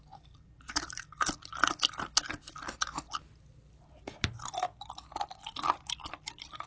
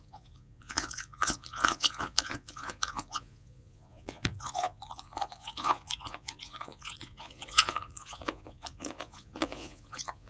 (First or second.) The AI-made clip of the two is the second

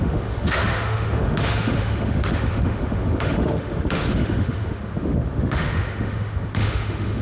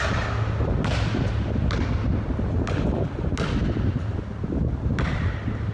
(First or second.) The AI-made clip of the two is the first